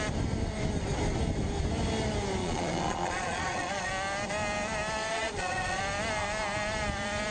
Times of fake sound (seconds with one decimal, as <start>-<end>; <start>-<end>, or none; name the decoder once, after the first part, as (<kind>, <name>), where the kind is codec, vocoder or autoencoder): 2.4-3.9 (vocoder, Vocos); 5.1-5.8